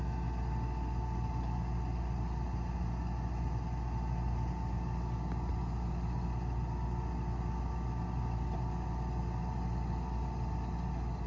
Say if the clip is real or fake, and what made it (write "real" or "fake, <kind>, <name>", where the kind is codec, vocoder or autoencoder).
real